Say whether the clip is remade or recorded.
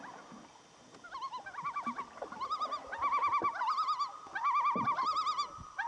recorded